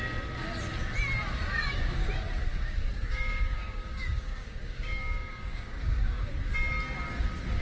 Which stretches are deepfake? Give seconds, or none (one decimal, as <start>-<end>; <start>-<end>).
1.5-2.1; 2.5-6.3